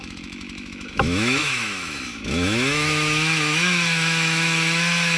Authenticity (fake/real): fake